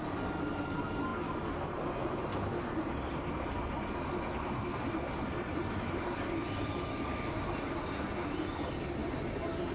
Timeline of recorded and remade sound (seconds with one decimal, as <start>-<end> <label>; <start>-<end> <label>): 0.0-9.7 recorded

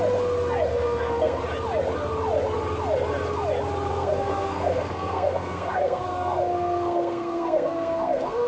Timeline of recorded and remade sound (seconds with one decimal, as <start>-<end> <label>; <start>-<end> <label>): 0.0-0.7 recorded; 0.7-1.4 remade; 1.4-3.9 recorded; 3.9-8.5 remade

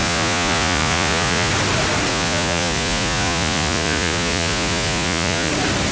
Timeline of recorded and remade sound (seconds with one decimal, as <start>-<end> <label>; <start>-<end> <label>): 0.0-1.5 remade; 1.5-2.1 recorded; 2.1-5.5 remade; 5.5-5.9 recorded

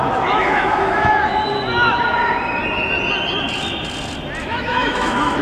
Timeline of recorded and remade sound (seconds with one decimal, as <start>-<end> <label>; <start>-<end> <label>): 0.0-1.2 remade; 1.2-4.4 recorded; 4.4-5.4 remade

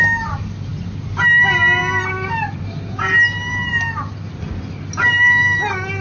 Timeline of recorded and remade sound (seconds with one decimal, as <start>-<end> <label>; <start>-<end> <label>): 0.0-6.0 recorded

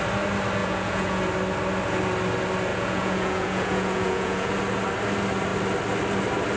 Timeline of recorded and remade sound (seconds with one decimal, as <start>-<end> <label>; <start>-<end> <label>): 0.0-0.6 recorded; 0.6-1.2 remade; 1.2-2.7 recorded; 2.7-4.5 remade; 4.5-6.6 recorded

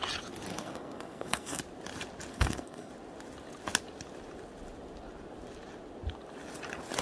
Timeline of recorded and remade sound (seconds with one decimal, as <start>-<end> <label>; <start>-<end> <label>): 0.0-0.5 recorded; 0.5-1.6 remade; 1.6-2.3 recorded; 2.3-2.9 remade; 2.9-7.0 recorded

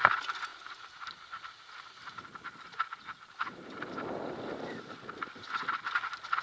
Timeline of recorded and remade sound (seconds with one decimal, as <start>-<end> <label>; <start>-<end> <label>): 0.0-6.4 recorded